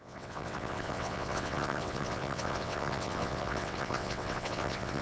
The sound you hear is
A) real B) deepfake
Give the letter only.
B